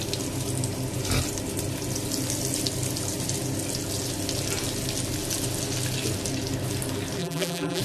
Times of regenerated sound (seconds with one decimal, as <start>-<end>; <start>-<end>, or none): 7.2-7.8